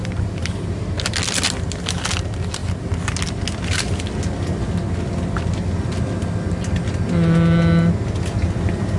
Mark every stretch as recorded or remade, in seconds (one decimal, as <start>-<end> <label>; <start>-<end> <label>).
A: 0.0-9.0 recorded